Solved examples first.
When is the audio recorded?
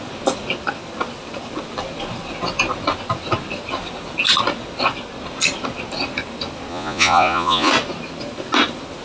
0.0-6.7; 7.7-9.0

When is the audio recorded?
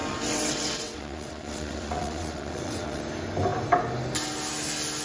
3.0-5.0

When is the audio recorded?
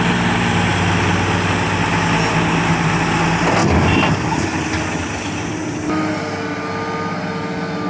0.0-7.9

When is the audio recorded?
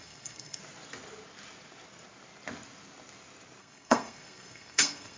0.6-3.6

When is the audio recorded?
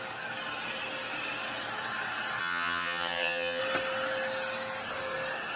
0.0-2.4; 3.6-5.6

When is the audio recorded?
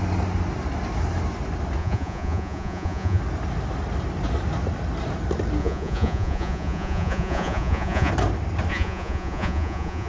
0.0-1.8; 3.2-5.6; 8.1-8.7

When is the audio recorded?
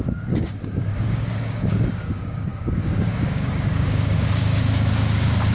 none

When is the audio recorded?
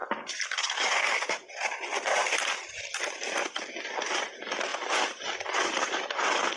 3.0-4.7